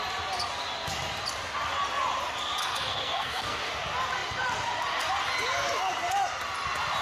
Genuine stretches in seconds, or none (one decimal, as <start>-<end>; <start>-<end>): 0.0-2.6; 3.7-7.0